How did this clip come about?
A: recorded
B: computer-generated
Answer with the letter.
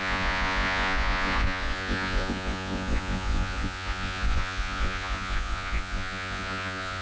B